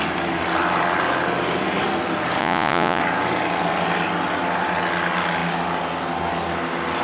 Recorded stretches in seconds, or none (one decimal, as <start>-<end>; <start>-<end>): 0.0-2.4; 3.0-7.0